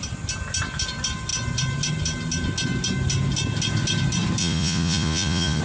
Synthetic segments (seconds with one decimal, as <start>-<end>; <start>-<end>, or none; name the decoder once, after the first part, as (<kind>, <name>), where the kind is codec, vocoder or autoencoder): 4.4-5.6 (vocoder, Vocos)